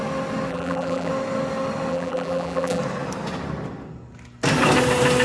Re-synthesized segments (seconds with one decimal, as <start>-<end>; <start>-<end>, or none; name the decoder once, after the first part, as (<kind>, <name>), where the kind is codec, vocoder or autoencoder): 0.5-1.1 (vocoder, BigVGAN v2); 1.9-2.8